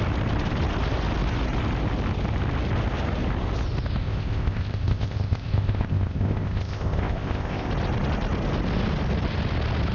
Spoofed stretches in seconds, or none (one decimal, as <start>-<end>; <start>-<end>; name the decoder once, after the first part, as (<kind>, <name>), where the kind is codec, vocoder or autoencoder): 4.0-7.7 (codec, ZipCodec)